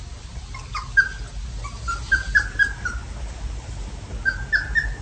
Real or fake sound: real